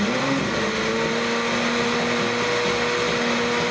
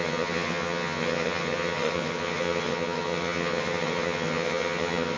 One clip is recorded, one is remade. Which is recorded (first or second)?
first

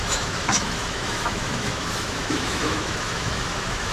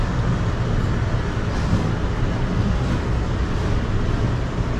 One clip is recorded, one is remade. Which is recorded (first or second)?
second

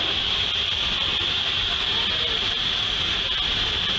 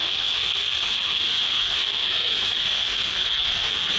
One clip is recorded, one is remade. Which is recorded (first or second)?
first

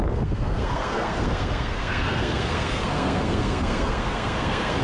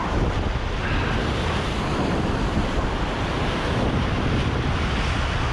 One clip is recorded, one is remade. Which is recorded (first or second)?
second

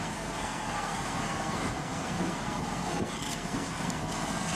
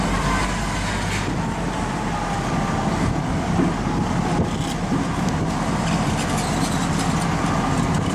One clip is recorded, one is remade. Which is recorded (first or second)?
second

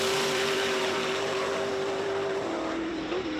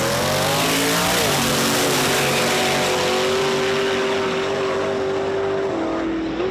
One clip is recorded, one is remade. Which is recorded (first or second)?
second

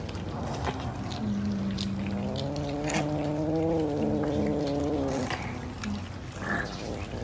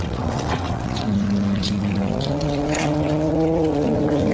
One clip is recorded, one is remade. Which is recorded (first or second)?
first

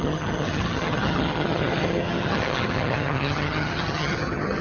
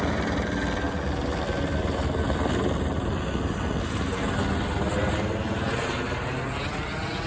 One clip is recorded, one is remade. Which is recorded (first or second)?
second